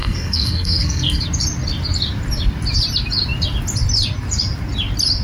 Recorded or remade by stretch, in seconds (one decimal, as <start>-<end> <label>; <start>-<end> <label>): 0.0-1.2 remade; 1.2-5.2 recorded